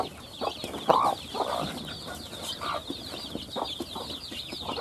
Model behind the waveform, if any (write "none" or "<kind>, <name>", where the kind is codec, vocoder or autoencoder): vocoder, BigVGAN v2